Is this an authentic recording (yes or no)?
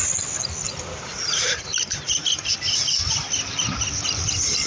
yes